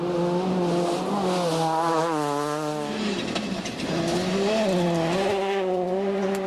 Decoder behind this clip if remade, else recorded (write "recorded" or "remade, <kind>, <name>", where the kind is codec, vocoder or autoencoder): recorded